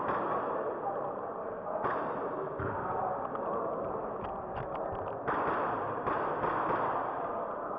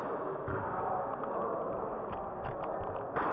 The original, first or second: second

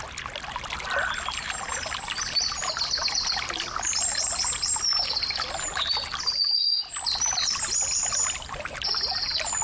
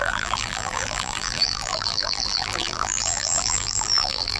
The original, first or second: first